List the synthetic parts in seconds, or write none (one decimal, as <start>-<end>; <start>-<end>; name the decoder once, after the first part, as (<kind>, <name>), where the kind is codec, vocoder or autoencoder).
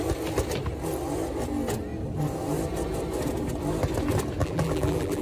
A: 4.4-5.2 (vocoder, BigVGAN v2)